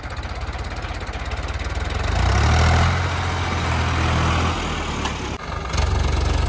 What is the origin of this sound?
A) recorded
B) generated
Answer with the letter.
A